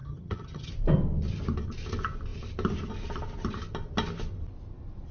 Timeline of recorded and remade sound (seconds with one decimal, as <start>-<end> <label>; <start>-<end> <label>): 0.0-0.7 remade; 0.7-5.1 recorded